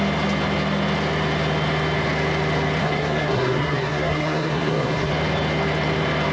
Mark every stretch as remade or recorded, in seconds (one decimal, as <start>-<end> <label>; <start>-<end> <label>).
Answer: 0.0-2.8 recorded; 2.8-5.1 remade; 5.1-6.3 recorded